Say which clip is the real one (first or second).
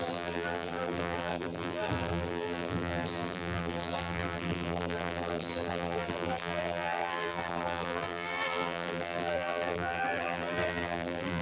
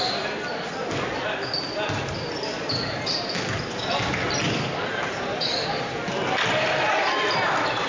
second